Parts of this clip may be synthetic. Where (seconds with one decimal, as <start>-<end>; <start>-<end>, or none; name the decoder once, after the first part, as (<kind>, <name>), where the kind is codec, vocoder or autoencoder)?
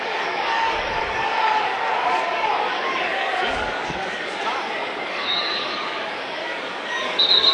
0.0-7.5 (codec, DAC)